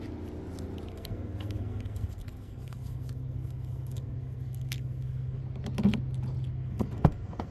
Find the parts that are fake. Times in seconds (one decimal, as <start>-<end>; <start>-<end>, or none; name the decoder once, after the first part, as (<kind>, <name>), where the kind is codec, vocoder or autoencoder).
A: 0.9-5.4 (codec, SNAC); 6.5-7.5